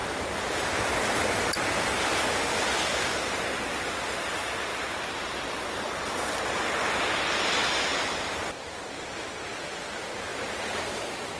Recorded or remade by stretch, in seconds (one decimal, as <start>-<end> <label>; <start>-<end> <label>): 0.0-4.7 recorded; 4.7-5.9 remade; 5.9-10.3 recorded; 10.3-11.4 remade